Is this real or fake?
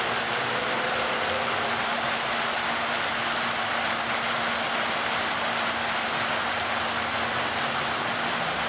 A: real